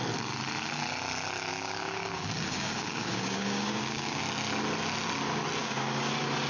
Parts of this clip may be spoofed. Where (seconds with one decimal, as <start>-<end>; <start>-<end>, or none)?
1.5-4.2; 5.6-6.1